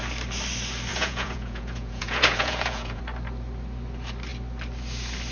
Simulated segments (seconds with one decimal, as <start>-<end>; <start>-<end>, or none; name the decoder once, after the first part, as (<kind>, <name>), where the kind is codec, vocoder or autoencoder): 0.9-3.0 (vocoder, Vocos)